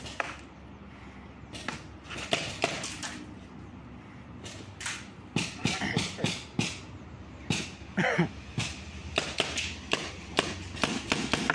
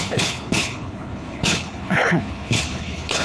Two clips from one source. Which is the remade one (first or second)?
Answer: second